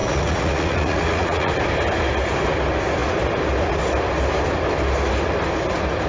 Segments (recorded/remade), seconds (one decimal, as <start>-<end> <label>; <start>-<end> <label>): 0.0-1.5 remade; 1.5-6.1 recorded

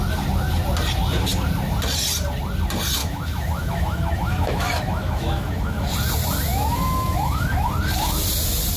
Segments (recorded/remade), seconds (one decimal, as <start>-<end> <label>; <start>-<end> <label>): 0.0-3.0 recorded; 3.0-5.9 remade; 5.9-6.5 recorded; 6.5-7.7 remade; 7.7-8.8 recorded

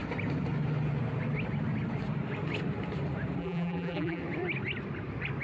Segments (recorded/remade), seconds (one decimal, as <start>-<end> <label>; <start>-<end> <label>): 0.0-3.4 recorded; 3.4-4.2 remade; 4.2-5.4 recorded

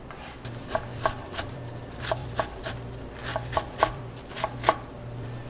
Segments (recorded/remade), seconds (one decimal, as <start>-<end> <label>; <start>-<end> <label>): 0.0-0.9 recorded; 0.9-1.6 remade; 1.6-2.2 recorded; 2.2-2.7 remade; 2.7-3.3 recorded; 3.3-4.1 remade; 4.1-5.5 recorded